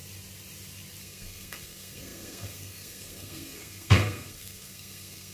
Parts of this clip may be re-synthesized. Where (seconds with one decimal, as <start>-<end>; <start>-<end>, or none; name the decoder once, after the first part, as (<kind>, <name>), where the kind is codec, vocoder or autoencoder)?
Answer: 1.0-5.3 (codec, SNAC)